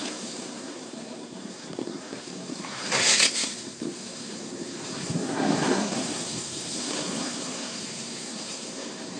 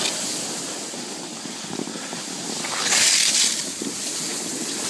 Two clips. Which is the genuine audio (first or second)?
second